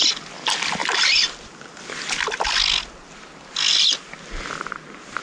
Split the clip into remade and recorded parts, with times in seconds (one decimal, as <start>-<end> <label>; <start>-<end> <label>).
0.0-5.2 recorded